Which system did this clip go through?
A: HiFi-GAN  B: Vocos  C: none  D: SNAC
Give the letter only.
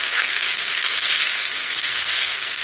D